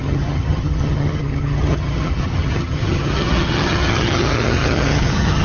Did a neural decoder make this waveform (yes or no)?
yes